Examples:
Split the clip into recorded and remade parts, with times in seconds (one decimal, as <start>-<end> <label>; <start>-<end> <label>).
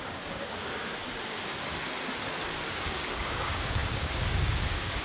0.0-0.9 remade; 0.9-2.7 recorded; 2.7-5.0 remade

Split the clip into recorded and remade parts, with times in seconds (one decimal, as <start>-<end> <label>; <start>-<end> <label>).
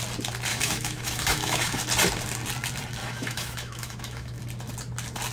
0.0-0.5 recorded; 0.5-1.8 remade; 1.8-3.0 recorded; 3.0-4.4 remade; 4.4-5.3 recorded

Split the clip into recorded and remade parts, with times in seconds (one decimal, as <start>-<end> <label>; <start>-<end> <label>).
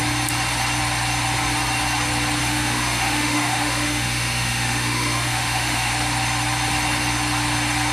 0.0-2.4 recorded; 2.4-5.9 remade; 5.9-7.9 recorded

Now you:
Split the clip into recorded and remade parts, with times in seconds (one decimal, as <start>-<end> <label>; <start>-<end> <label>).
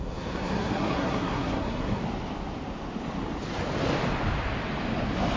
0.0-2.0 remade; 2.0-5.4 recorded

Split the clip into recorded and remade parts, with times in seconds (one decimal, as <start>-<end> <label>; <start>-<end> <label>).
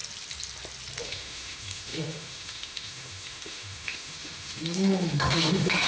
0.0-1.0 recorded; 1.0-5.9 remade